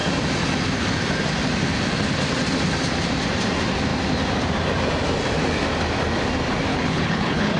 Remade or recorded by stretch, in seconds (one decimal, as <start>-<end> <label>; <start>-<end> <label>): 0.0-6.7 recorded; 6.7-7.6 remade